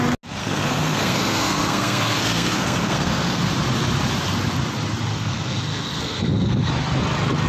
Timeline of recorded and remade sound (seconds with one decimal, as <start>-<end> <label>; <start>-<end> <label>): 0.0-0.4 recorded; 0.4-3.4 remade; 3.4-5.1 recorded; 5.1-6.7 remade; 6.7-7.5 recorded